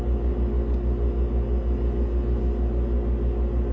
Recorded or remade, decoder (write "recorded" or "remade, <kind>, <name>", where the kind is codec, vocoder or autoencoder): recorded